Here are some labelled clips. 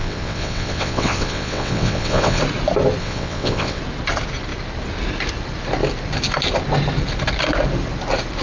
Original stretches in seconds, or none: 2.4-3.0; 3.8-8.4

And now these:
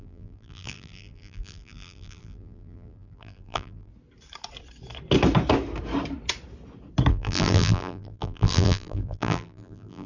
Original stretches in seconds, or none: 3.9-7.1

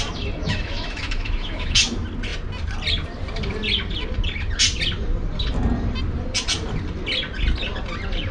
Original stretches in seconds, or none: 0.0-0.4; 1.8-8.3

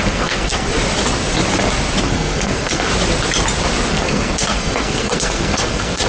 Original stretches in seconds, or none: 0.7-2.0; 2.9-3.9

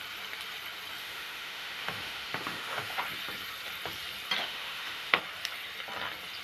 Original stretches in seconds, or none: 0.0-1.0; 3.0-4.4; 5.2-6.4

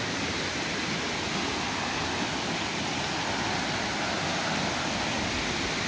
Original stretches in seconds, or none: 0.0-5.9

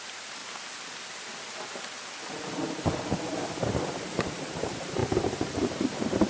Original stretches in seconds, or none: 0.4-2.5